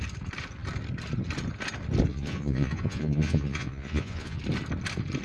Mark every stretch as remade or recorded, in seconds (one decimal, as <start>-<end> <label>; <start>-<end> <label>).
0.0-2.1 recorded; 2.1-4.4 remade; 4.4-5.2 recorded